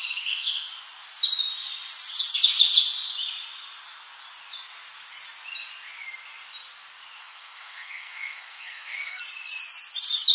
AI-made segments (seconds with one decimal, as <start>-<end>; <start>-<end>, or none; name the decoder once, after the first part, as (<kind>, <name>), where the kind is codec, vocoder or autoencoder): 0.0-0.7 (codec, SNAC); 7.2-9.2